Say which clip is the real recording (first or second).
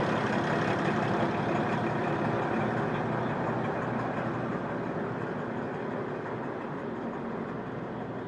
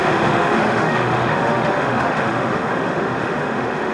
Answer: first